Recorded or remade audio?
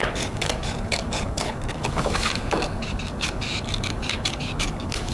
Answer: remade